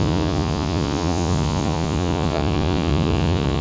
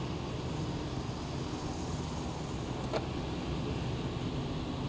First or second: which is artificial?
first